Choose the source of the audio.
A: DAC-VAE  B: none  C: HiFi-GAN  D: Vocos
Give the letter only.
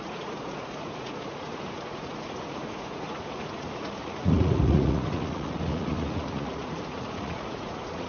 D